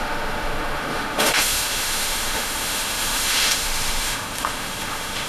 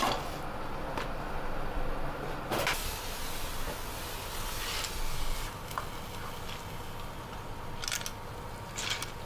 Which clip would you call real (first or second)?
second